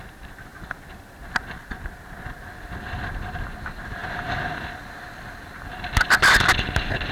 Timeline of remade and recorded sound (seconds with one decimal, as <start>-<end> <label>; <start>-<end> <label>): 0.0-7.1 recorded